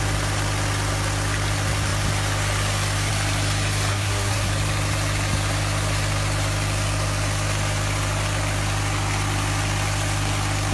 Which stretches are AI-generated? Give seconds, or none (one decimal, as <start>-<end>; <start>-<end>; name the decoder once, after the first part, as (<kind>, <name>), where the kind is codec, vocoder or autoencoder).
3.9-4.5 (codec, SNAC)